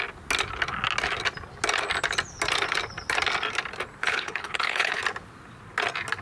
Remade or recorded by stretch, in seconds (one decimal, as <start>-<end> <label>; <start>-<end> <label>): 0.0-4.0 recorded; 4.0-5.0 remade; 5.0-6.2 recorded